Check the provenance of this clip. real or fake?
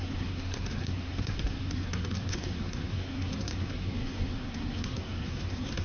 fake